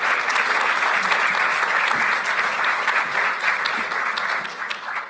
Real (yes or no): yes